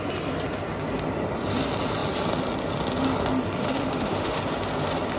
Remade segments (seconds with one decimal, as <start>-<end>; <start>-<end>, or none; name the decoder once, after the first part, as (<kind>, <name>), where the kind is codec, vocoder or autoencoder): 3.6-4.4 (autoencoder, DAC-VAE)